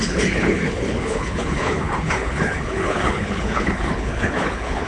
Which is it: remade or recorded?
remade